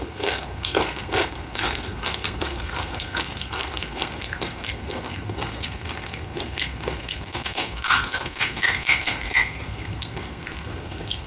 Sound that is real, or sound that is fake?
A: fake